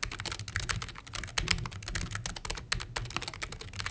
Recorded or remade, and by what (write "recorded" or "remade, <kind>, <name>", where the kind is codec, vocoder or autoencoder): recorded